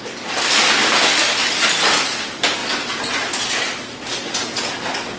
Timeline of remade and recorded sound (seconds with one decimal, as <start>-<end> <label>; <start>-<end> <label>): 0.0-5.2 recorded